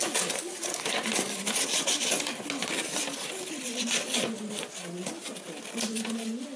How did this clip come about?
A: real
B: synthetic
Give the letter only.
A